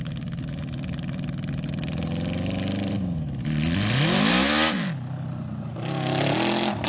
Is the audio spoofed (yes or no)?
no